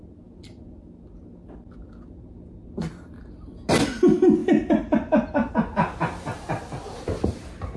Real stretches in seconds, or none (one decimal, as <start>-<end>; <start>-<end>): 0.0-7.8